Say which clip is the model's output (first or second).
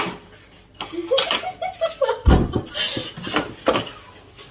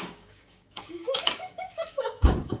second